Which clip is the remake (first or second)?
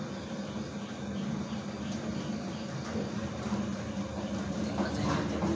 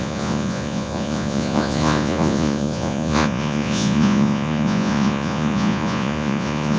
second